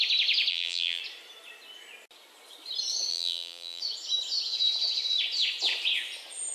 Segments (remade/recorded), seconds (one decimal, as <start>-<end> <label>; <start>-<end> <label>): 0.0-0.5 recorded; 0.5-1.0 remade; 1.0-3.1 recorded; 3.1-3.8 remade; 3.8-6.5 recorded